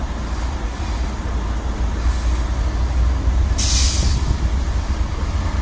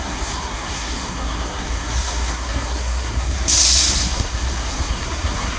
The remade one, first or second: second